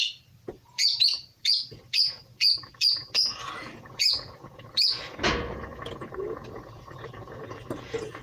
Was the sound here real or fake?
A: fake